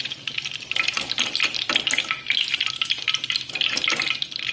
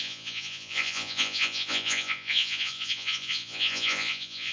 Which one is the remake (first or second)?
second